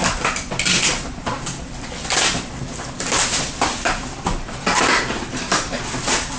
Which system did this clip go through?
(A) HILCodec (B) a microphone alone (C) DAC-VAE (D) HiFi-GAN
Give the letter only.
B